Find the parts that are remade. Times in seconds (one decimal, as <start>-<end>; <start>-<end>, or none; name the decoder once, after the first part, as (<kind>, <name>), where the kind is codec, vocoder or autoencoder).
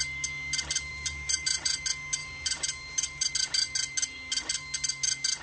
0.9-1.8 (vocoder, BigVGAN v2); 2.2-3.3